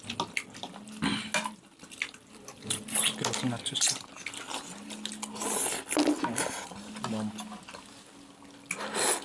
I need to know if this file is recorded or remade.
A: recorded